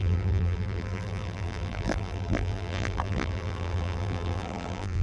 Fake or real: fake